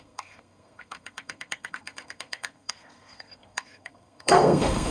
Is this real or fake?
fake